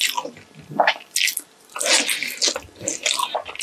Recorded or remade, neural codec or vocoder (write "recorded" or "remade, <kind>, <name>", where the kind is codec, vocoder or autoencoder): recorded